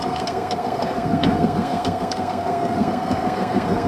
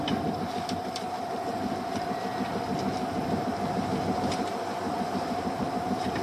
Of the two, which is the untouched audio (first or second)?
second